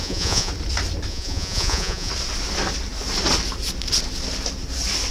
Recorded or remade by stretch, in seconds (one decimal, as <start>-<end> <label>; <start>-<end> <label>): 0.0-0.5 remade; 0.5-1.1 recorded; 1.1-2.1 remade; 2.1-5.1 recorded